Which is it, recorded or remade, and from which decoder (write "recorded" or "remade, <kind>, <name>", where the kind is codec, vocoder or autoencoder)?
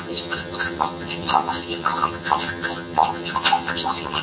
remade, vocoder, HiFi-GAN